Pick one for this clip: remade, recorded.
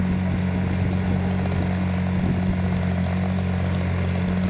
recorded